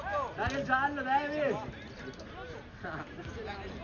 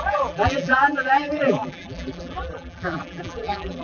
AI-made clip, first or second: second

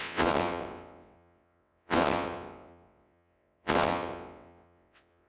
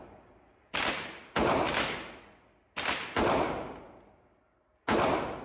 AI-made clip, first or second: first